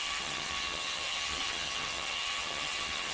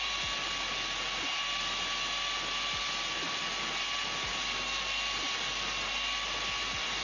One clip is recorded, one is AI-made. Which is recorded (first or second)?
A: second